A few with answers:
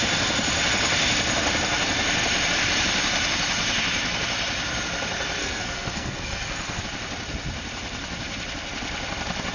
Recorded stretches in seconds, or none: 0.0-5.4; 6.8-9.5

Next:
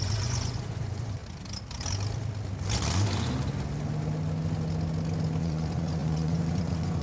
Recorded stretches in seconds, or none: 1.2-5.4

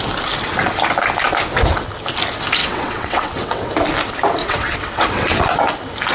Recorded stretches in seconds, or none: 0.0-2.6; 3.7-4.4; 5.4-6.1